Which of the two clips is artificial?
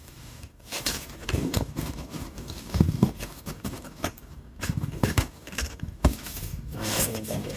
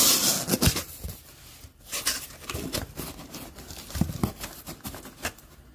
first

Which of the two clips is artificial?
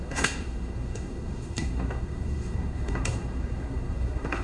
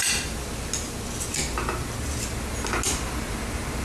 first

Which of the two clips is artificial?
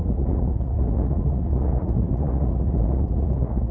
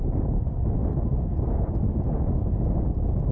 first